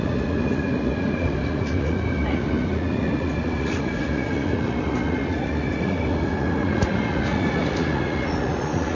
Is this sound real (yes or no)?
no